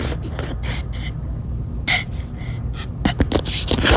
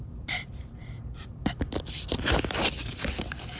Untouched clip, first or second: first